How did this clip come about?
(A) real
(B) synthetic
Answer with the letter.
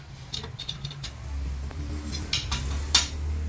A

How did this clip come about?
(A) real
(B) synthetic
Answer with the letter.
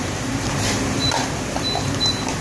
B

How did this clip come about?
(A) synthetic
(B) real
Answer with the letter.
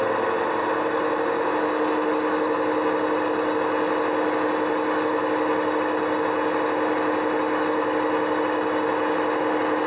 B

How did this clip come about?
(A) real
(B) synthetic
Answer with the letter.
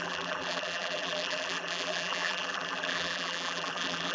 B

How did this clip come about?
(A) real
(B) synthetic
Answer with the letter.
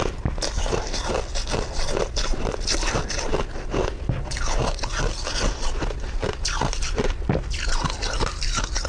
A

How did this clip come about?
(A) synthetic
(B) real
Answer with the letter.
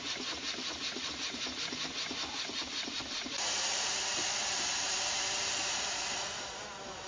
A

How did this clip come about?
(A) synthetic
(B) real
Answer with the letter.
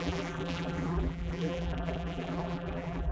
A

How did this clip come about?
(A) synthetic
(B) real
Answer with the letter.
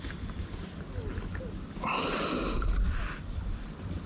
B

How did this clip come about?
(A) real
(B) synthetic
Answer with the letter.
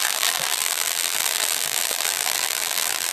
B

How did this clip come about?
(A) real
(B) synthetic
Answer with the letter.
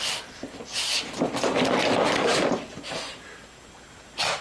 A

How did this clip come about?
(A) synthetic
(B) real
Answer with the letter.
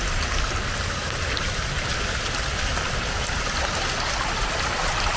B